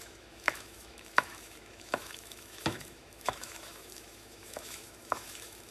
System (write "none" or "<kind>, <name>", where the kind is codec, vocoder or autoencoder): autoencoder, DAC-VAE